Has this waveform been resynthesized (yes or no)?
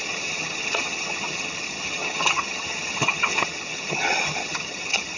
yes